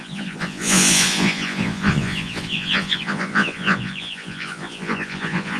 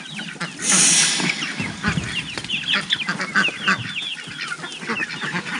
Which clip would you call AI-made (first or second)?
first